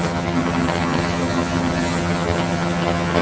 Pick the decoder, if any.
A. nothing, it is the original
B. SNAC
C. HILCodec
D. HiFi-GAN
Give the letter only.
D